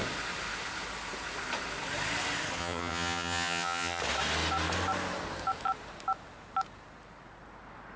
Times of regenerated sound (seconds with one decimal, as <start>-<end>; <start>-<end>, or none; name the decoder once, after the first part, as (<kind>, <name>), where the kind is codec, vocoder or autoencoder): 2.6-4.0 (vocoder, HiFi-GAN)